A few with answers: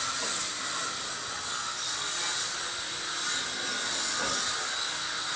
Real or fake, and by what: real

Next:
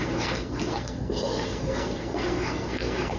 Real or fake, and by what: fake, codec, SNAC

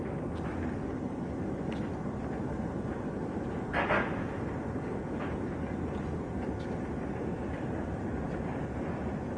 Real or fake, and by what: real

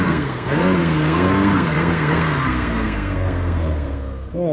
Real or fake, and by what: fake, codec, SNAC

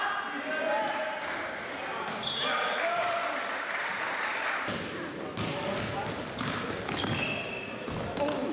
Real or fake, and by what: real